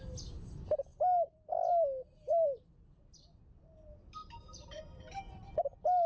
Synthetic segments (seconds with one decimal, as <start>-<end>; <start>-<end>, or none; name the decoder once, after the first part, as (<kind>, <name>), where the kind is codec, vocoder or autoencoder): 0.9-1.5 (vocoder, BigVGAN v2); 4.2-5.3